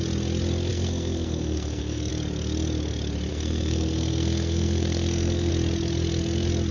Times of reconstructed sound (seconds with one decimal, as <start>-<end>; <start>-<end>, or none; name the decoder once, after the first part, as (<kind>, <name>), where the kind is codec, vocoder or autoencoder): 0.7-2.1 (codec, SNAC); 3.3-5.5